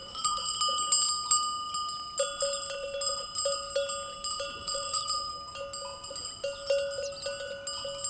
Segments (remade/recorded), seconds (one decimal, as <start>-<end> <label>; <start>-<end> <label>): 0.0-0.6 remade; 0.6-4.5 recorded; 4.5-5.3 remade; 5.3-8.1 recorded